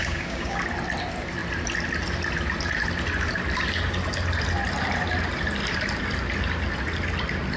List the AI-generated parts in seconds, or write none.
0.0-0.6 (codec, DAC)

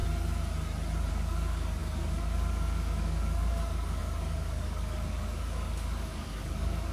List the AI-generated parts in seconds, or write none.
1.1-6.9 (codec, DAC)